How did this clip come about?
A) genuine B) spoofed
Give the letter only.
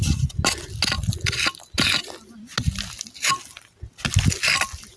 A